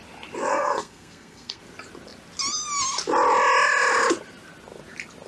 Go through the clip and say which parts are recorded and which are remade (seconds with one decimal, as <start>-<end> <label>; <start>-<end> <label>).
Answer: 0.0-0.5 recorded; 0.5-1.6 remade; 1.6-5.3 recorded